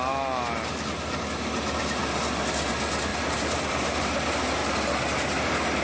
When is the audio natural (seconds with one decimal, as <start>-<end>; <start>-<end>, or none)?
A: 0.0-3.1; 4.0-5.8